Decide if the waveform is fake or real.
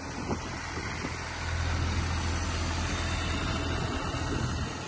real